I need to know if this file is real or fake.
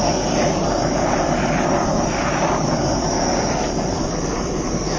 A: fake